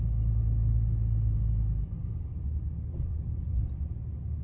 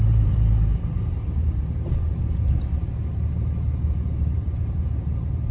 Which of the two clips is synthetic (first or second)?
second